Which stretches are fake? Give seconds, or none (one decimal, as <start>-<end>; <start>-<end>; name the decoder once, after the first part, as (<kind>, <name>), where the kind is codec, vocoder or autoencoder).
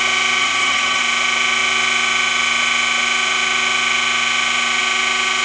0.4-1.0 (vocoder, HiFi-GAN)